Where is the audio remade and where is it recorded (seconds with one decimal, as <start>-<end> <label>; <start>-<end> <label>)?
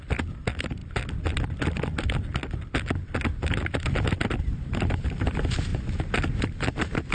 0.0-5.7 remade; 5.7-6.4 recorded; 6.4-7.1 remade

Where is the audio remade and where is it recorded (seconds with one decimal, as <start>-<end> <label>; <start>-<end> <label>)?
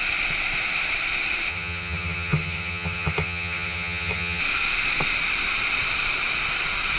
0.0-1.5 recorded; 1.5-4.4 remade; 4.4-7.0 recorded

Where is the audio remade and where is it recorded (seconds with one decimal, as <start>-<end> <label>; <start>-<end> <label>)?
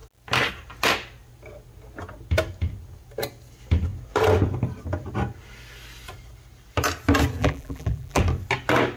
0.0-7.4 recorded; 7.4-8.2 remade; 8.2-9.0 recorded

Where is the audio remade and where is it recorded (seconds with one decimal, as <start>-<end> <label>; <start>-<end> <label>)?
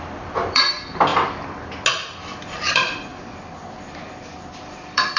0.0-1.1 remade; 1.1-2.5 recorded; 2.5-3.1 remade; 3.1-4.5 recorded; 4.5-5.2 remade